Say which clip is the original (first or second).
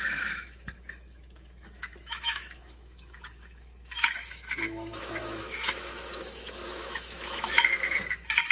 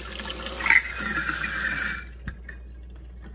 second